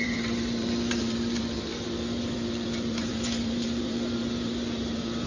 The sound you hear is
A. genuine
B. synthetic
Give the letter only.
B